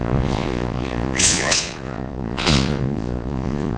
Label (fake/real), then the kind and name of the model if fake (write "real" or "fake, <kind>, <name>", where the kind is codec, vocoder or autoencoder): fake, vocoder, Vocos